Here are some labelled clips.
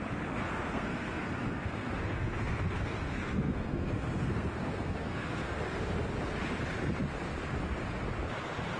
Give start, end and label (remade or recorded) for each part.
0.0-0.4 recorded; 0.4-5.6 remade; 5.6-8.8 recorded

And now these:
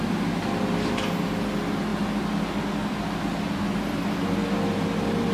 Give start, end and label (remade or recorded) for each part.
0.0-5.3 recorded

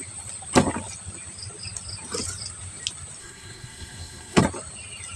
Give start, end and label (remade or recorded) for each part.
0.0-3.2 recorded; 3.2-4.4 remade; 4.4-5.2 recorded

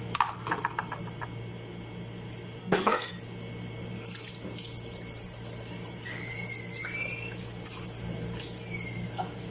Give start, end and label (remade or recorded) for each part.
0.0-2.6 recorded; 2.6-3.1 remade; 3.1-9.5 recorded

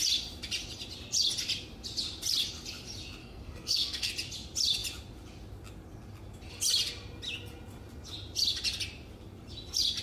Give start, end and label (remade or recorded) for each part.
0.0-3.2 recorded; 3.2-4.1 remade; 4.1-10.0 recorded

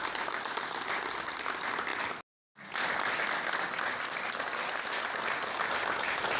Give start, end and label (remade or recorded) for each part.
0.0-6.4 recorded

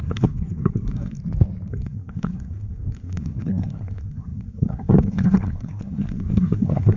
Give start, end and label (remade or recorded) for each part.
0.0-1.2 remade; 1.2-1.7 recorded; 1.7-7.0 remade